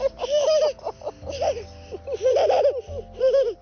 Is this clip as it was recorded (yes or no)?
no